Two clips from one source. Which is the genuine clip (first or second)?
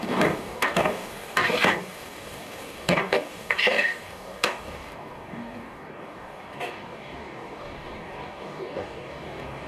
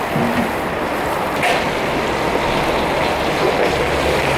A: second